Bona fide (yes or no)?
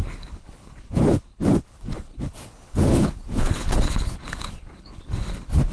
no